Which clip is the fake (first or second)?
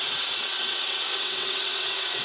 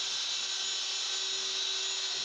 first